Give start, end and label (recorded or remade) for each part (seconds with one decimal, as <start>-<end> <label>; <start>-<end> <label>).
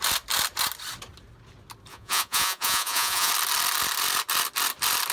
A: 0.0-1.9 recorded; 1.9-3.3 remade; 3.3-5.1 recorded